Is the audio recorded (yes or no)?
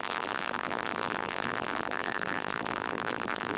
no